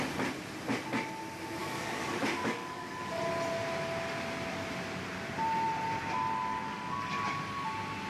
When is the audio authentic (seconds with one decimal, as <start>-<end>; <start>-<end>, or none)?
0.0-1.6; 3.2-6.5; 7.2-8.1

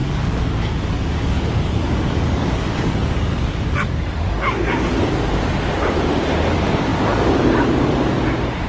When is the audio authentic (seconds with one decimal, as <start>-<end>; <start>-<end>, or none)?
4.9-8.7

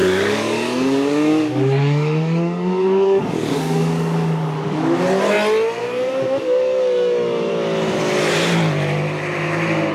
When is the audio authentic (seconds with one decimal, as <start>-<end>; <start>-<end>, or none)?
4.8-5.8; 7.5-9.9

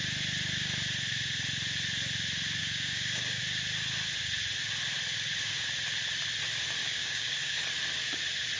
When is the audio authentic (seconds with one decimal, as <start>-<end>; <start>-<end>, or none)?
0.0-2.6; 3.4-6.8; 7.6-8.6

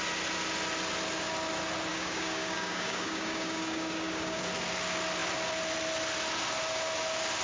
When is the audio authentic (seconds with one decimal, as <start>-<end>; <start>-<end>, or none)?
0.0-1.9; 4.4-7.4